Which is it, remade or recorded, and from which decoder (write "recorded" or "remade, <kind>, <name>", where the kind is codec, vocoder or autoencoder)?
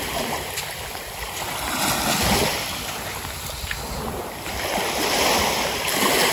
recorded